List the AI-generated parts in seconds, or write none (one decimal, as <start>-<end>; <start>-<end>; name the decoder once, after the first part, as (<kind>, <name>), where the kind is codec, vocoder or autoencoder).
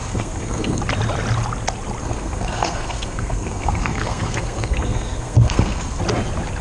0.0-0.8 (codec, SNAC); 2.0-6.0